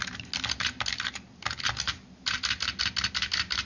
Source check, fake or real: real